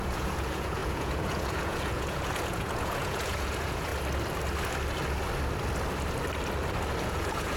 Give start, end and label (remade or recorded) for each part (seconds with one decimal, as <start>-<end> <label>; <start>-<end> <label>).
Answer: 0.0-3.9 remade; 3.9-7.0 recorded; 7.0-7.6 remade